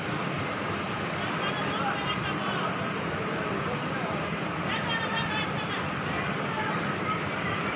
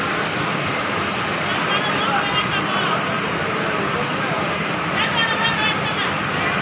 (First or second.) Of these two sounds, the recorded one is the second